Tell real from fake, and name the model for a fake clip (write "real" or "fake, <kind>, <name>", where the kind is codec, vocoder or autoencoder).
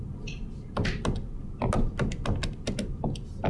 real